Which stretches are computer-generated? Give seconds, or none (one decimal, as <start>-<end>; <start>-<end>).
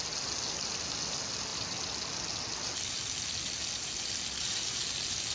none